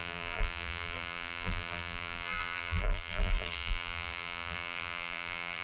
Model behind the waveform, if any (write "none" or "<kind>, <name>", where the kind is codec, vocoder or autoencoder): vocoder, BigVGAN v2